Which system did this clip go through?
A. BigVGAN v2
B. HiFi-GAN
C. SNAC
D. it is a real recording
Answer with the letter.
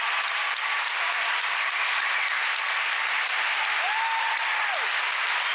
A